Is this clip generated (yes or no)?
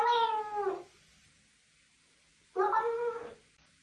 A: no